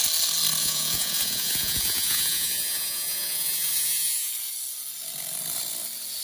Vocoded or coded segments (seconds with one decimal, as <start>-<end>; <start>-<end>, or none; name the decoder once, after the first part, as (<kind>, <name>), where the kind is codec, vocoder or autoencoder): 0.6-4.3 (vocoder, Vocos)